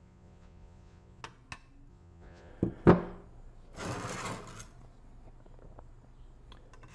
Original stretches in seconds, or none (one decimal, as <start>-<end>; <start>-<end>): 1.2-1.9; 2.5-6.9